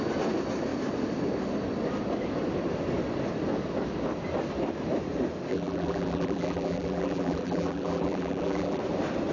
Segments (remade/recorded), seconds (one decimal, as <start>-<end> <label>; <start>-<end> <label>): 0.0-5.5 recorded; 5.5-8.8 remade; 8.8-9.3 recorded